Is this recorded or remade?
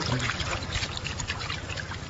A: recorded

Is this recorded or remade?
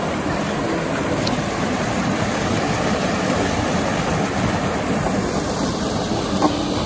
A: recorded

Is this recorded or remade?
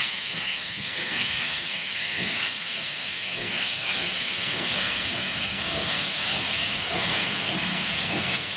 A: remade